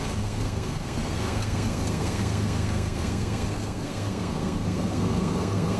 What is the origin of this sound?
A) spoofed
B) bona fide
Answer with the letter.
A